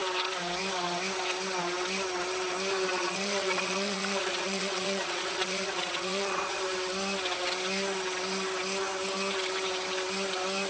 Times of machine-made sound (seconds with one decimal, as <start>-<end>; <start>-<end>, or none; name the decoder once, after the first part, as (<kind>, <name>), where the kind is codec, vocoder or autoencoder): 2.9-6.6 (vocoder, Vocos)